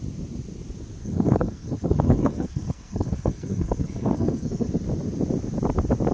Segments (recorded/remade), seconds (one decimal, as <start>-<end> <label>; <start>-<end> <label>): 0.0-1.0 recorded; 1.0-4.7 remade; 4.7-6.1 recorded